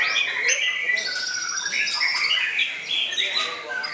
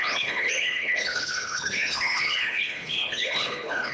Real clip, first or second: first